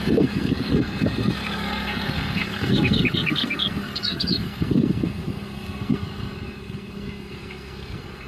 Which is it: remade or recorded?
remade